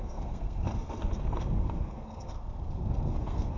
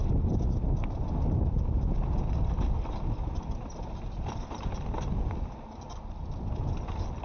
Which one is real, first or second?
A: second